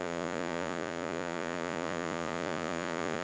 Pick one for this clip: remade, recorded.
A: remade